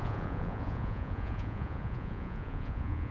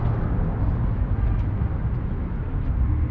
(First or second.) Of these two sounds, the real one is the second